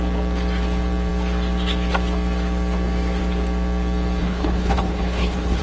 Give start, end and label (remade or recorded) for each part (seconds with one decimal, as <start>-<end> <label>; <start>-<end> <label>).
0.0-4.2 recorded; 4.2-5.6 remade